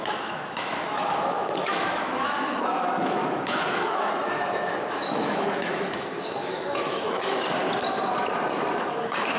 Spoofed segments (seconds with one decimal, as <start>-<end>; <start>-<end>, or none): 0.0-7.6; 8.8-9.4

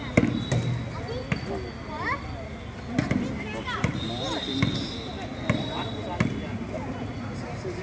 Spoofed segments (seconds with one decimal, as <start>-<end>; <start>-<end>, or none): none

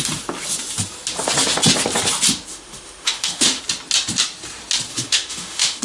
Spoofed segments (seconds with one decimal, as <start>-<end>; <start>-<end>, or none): 2.5-3.6; 4.9-5.8

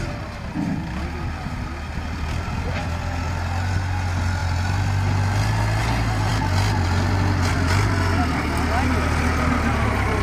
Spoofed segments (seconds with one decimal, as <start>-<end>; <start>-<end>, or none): none

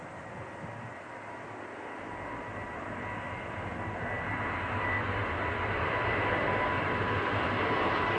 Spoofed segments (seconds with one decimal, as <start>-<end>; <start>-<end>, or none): none